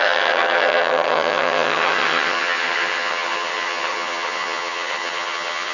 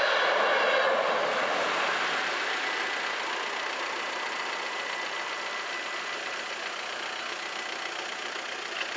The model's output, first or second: first